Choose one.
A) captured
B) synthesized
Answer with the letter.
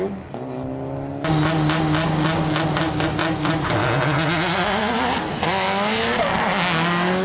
A